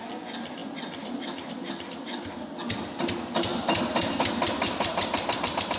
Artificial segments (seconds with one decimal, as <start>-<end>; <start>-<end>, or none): 3.5-5.8